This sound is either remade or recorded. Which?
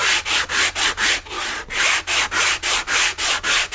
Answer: recorded